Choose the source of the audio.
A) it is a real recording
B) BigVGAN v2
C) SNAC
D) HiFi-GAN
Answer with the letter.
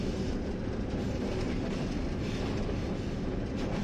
A